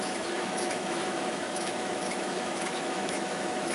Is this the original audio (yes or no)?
no